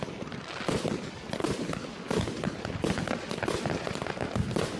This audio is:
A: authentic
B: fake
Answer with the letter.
A